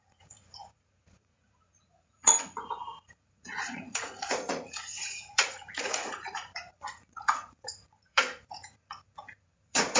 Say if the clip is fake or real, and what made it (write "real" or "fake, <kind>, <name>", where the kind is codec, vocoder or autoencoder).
fake, vocoder, Vocos